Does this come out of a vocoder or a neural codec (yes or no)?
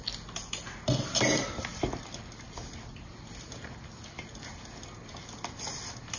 no